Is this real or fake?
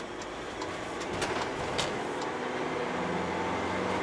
real